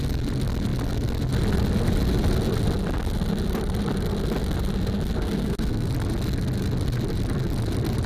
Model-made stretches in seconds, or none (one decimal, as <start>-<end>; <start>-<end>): 5.2-5.9